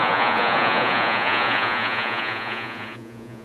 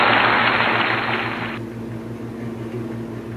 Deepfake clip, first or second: first